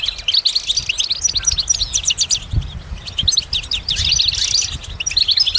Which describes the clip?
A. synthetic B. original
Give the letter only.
B